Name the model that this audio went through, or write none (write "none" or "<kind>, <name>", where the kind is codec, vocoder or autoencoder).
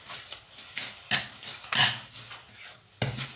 none